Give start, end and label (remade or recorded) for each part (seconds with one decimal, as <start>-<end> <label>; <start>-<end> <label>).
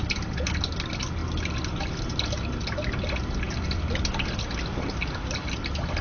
0.0-6.0 recorded